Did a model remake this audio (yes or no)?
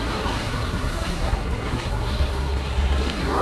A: yes